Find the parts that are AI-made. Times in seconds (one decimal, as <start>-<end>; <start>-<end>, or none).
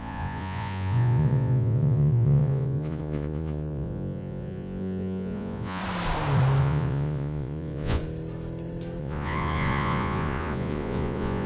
0.0-5.8; 6.6-8.0; 9.0-11.5